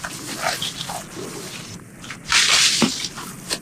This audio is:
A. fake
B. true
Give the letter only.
B